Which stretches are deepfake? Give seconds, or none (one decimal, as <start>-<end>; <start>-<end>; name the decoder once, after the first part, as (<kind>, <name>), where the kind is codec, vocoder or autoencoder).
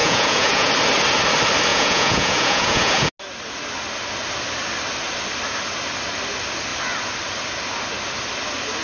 0.0-0.7 (vocoder, Vocos); 1.7-3.1